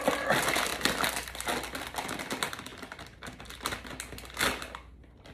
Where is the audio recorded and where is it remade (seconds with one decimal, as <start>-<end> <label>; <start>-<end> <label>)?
0.0-5.3 recorded